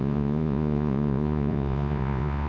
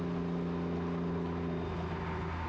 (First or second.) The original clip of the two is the second